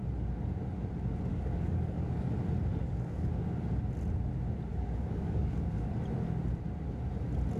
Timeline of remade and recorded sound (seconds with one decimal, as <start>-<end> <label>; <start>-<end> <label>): 0.0-1.3 recorded; 1.3-2.3 remade; 2.3-2.8 recorded; 2.8-3.3 remade; 3.3-4.7 recorded; 4.7-5.9 remade; 5.9-7.6 recorded